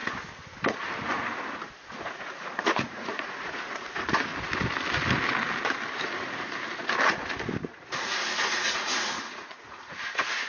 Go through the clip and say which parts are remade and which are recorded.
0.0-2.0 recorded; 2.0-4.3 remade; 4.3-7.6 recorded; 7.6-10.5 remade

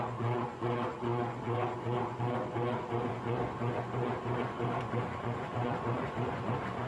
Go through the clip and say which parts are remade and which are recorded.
0.0-6.9 remade

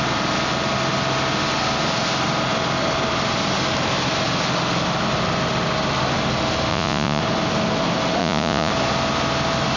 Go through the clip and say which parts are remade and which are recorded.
0.0-6.7 recorded; 6.7-7.2 remade; 7.2-8.2 recorded; 8.2-8.7 remade; 8.7-9.8 recorded

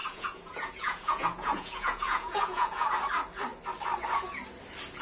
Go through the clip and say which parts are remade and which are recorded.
0.0-3.0 remade; 3.0-5.0 recorded

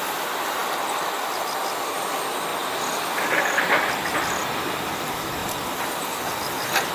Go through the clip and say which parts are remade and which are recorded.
0.0-6.9 recorded